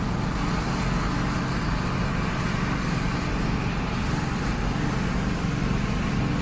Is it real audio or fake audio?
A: real